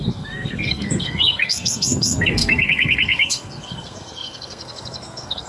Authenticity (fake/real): fake